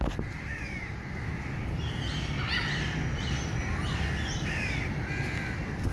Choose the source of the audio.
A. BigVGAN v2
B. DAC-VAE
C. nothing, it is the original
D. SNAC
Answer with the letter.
C